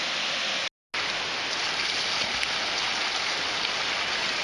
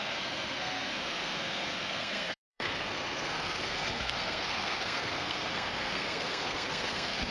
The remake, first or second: second